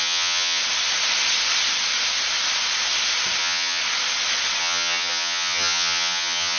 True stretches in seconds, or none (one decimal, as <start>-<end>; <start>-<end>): 0.6-3.4; 3.8-4.6